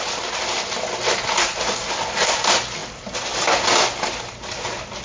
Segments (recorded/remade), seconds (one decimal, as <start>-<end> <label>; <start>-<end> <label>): 0.0-5.0 recorded